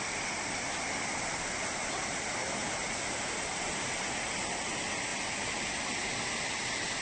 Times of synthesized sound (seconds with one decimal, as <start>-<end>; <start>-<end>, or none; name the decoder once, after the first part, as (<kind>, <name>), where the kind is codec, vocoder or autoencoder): 5.1-5.6 (vocoder, BigVGAN v2)